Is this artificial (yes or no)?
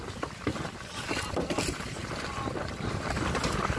no